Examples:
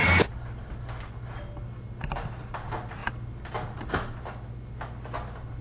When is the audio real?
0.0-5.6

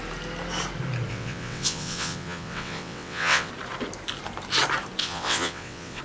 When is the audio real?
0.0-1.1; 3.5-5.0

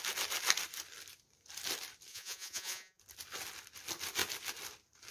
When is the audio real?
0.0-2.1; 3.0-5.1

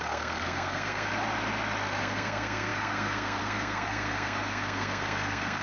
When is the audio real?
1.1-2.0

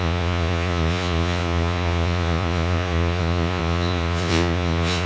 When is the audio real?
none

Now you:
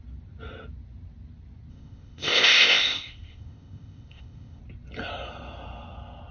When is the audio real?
0.0-1.7; 4.6-6.3

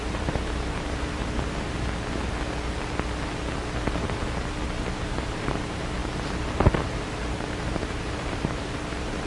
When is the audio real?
1.2-5.1